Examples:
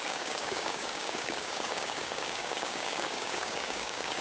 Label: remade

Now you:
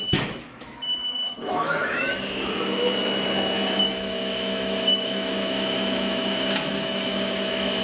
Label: remade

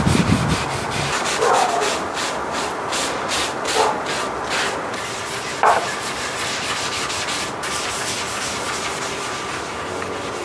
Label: remade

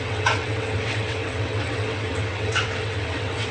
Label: remade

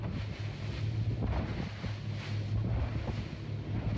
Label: recorded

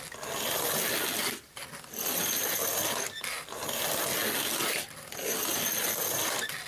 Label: recorded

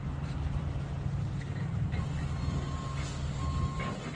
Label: recorded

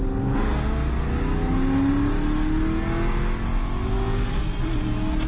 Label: recorded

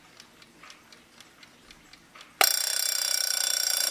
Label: recorded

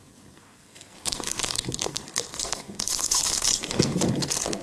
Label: remade